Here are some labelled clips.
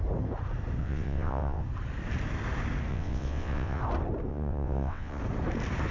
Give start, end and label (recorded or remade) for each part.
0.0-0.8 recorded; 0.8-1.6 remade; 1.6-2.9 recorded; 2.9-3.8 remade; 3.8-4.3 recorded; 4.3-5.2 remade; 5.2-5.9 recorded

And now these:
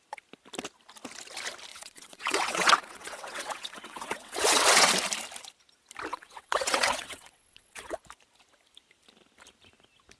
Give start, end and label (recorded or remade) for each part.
0.0-1.7 recorded; 1.7-4.9 remade; 4.9-6.1 recorded; 6.1-8.0 remade; 8.0-10.2 recorded

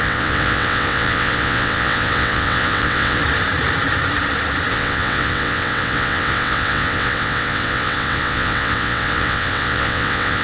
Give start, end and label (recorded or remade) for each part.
0.0-3.2 remade; 3.2-4.7 recorded; 4.7-10.4 remade